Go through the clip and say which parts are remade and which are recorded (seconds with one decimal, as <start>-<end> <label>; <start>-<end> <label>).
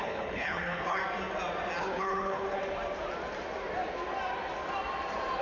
0.0-1.0 remade; 1.0-1.8 recorded; 1.8-2.6 remade; 2.6-5.4 recorded